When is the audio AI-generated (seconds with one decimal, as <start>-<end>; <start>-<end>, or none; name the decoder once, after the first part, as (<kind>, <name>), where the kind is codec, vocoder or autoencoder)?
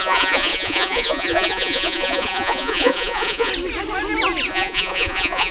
0.0-3.5 (vocoder, Vocos); 4.5-5.5